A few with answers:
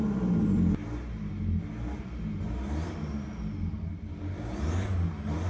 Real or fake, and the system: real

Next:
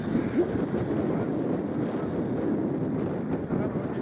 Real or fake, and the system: real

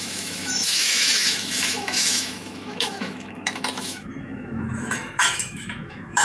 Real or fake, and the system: fake, autoencoder, DAC-VAE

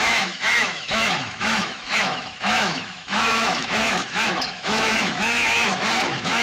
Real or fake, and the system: fake, autoencoder, DAC-VAE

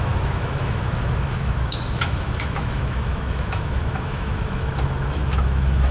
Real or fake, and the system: fake, autoencoder, DAC-VAE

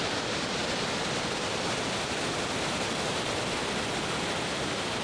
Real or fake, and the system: real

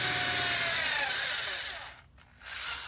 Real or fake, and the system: real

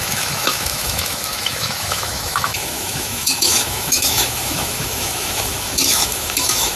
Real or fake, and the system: fake, autoencoder, DAC-VAE